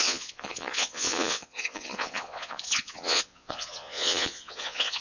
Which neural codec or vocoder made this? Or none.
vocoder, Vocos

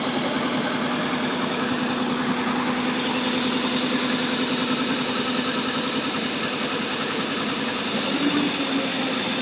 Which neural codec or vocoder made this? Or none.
none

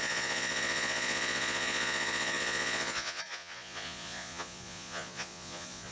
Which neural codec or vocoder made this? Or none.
vocoder, Vocos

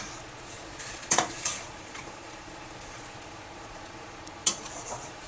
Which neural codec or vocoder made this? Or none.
vocoder, Vocos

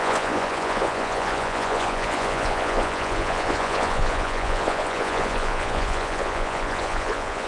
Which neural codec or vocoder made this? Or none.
vocoder, Vocos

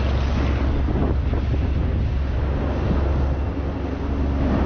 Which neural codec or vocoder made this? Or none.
none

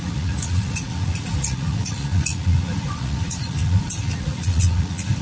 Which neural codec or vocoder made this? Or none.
vocoder, Vocos